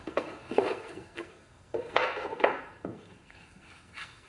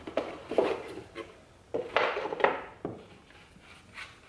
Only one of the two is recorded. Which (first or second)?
second